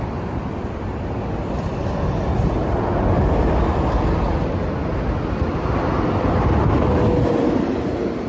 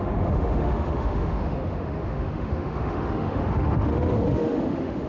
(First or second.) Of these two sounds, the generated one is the second